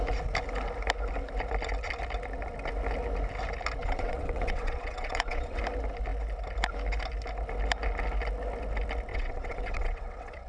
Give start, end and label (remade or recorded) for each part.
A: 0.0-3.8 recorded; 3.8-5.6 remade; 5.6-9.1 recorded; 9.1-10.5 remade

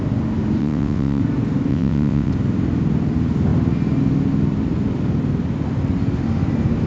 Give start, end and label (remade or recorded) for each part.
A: 0.0-0.6 recorded; 0.6-1.2 remade; 1.2-1.7 recorded; 1.7-2.3 remade; 2.3-6.9 recorded